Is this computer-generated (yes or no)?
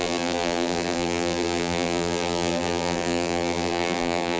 yes